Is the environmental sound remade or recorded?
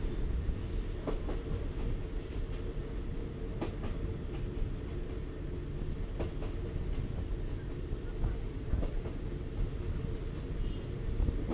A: recorded